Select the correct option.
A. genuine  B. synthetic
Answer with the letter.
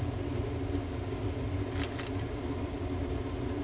A